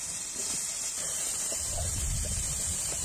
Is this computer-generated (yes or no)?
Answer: yes